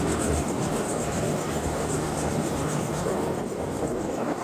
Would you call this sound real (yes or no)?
no